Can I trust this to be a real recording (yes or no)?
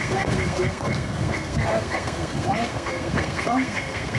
no